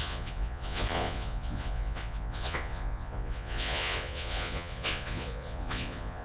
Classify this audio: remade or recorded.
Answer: remade